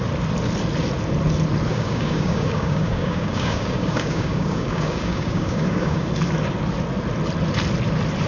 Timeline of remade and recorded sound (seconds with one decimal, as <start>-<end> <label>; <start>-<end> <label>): 0.0-1.7 recorded; 1.7-6.1 remade; 6.1-8.3 recorded